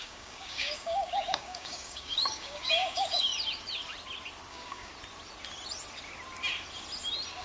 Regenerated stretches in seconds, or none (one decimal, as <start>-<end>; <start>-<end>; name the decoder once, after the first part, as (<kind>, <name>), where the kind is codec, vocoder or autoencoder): 0.0-3.3 (codec, DAC); 4.5-4.9